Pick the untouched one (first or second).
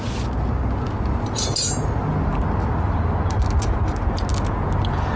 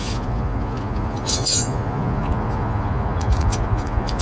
first